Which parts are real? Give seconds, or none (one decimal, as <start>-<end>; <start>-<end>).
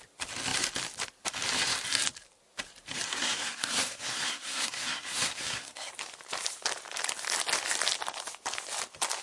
0.0-3.1; 5.9-9.2